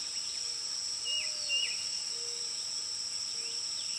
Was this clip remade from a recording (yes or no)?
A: no